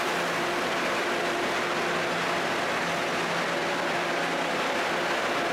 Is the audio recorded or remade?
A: recorded